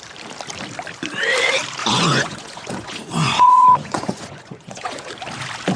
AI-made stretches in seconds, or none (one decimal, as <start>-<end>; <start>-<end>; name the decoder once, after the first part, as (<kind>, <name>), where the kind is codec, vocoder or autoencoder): 1.8-5.1 (vocoder, Vocos)